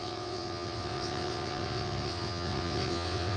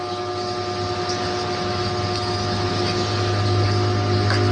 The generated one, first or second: first